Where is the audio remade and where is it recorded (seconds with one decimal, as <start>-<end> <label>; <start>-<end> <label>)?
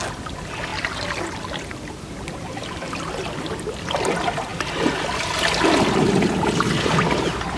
0.0-7.6 recorded